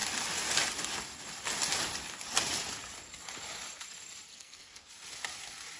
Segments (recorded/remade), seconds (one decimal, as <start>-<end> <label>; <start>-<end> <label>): 0.0-4.3 recorded; 4.3-4.9 remade; 4.9-5.8 recorded